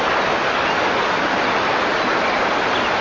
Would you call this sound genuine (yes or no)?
yes